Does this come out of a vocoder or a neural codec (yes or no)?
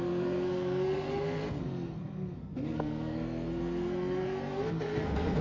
yes